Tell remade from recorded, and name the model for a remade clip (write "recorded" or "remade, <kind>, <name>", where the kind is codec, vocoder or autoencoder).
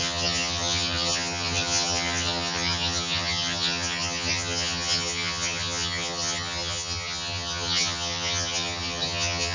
remade, vocoder, HiFi-GAN